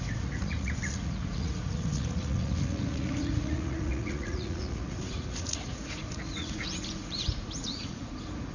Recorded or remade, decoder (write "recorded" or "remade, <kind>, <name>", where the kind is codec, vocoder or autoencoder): remade, vocoder, Vocos